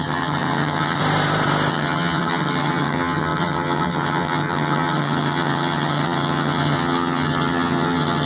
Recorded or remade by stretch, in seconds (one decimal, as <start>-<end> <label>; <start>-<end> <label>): 0.0-1.0 remade; 1.0-1.7 recorded; 1.7-8.3 remade